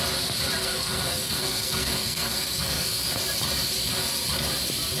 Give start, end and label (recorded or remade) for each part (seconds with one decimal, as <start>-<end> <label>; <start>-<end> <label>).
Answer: 0.0-0.6 recorded; 0.6-3.1 remade; 3.1-5.0 recorded